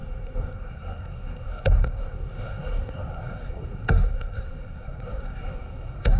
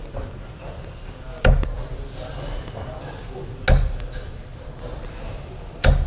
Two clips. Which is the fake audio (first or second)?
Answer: first